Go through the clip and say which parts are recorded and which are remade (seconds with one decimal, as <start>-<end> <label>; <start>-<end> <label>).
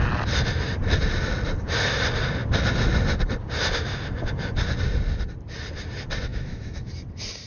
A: 0.0-6.3 recorded; 6.3-6.9 remade; 6.9-7.5 recorded